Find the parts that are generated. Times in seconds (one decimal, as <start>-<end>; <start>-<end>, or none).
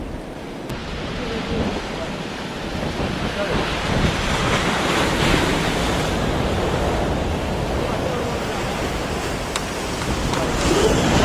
none